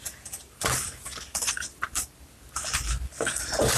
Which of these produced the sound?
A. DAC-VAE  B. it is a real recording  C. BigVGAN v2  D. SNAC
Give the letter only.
C